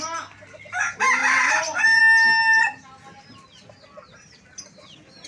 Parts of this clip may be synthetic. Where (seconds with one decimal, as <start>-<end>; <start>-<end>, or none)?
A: 1.2-2.0